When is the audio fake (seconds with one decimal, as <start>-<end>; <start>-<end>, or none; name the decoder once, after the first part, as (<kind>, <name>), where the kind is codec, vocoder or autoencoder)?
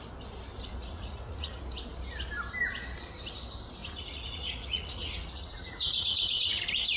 0.8-1.6 (vocoder, Vocos); 3.8-6.6